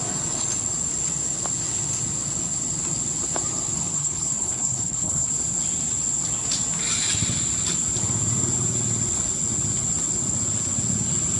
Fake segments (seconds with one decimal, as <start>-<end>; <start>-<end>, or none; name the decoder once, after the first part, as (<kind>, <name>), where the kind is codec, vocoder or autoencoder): 3.9-5.3 (codec, HILCodec)